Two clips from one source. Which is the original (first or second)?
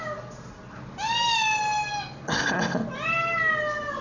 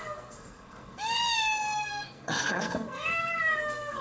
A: first